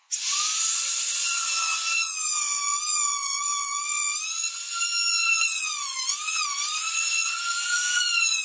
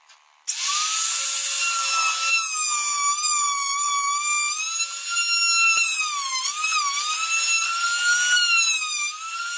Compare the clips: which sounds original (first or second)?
second